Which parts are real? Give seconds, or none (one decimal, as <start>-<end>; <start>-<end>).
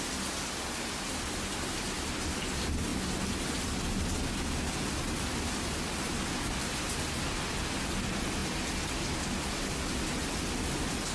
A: 0.0-11.1